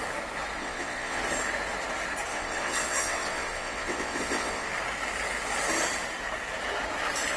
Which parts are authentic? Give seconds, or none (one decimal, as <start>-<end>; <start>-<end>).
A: 0.0-0.6; 1.2-2.3; 4.7-7.4